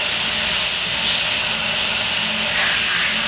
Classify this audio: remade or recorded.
recorded